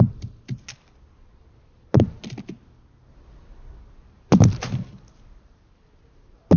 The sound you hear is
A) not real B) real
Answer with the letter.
B